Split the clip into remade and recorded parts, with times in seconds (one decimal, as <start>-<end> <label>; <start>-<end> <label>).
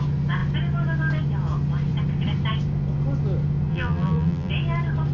0.0-3.7 recorded; 3.7-4.5 remade; 4.5-5.1 recorded